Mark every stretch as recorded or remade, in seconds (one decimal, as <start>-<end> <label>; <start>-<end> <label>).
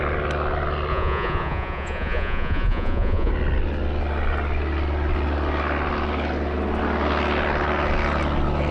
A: 0.0-0.9 recorded; 0.9-3.3 remade; 3.3-8.7 recorded